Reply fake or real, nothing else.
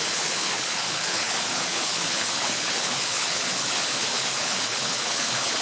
fake